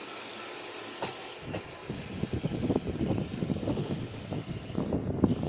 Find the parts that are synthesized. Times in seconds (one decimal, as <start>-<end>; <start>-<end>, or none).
3.6-4.3